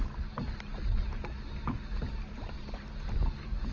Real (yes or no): yes